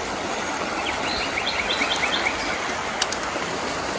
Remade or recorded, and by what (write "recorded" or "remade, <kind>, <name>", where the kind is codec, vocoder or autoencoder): recorded